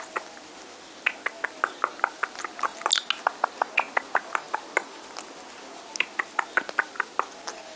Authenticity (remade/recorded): recorded